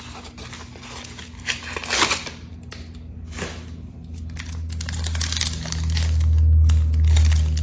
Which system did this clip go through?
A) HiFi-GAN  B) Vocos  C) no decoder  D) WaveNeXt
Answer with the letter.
C